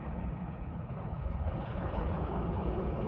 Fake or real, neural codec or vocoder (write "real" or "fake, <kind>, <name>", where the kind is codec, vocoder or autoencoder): fake, codec, HILCodec